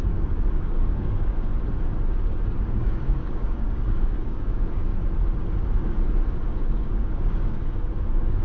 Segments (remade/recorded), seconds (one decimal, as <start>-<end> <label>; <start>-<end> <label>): 0.0-1.5 remade; 1.5-2.6 recorded; 2.6-4.9 remade; 4.9-6.5 recorded; 6.5-8.4 remade